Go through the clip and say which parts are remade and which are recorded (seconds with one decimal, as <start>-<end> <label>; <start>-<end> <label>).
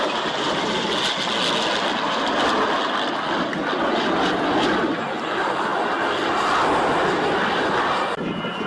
0.0-8.7 recorded